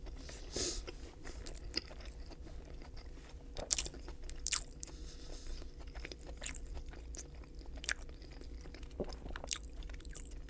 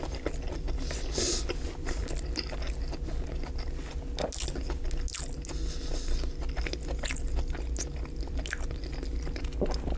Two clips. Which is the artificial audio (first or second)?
first